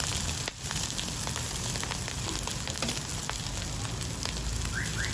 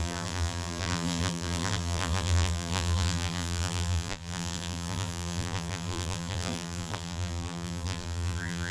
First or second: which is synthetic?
second